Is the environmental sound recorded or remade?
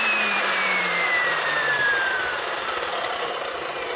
remade